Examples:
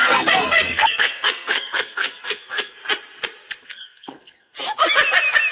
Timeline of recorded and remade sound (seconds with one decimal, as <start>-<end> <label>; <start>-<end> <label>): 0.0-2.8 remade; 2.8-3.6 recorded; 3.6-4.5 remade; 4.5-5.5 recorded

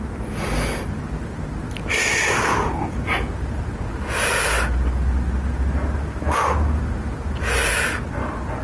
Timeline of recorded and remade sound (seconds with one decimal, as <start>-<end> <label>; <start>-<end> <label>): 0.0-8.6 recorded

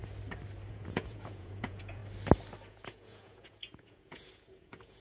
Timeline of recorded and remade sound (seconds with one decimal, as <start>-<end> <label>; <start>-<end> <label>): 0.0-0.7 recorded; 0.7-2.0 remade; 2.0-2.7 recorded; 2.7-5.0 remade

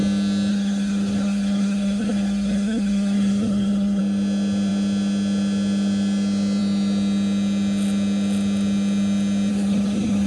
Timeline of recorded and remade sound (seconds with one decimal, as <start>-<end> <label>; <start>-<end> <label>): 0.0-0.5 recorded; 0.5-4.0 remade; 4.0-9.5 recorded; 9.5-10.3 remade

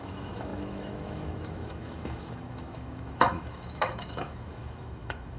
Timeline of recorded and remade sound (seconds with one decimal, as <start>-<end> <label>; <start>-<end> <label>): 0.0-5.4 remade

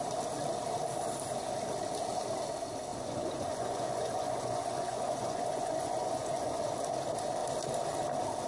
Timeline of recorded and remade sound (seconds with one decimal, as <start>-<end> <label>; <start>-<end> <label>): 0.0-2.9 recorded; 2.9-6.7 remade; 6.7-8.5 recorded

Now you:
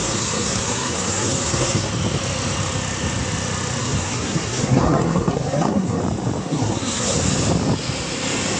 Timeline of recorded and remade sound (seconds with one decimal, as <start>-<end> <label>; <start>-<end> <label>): 0.0-1.9 remade; 1.9-3.8 recorded; 3.8-6.0 remade; 6.0-6.4 recorded; 6.4-7.2 remade; 7.2-8.6 recorded